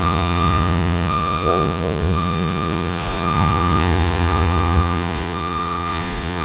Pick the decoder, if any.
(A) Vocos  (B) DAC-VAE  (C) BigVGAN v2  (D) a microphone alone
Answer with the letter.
A